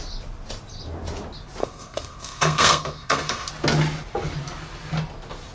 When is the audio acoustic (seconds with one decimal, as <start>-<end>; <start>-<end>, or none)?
0.0-1.6; 3.5-5.5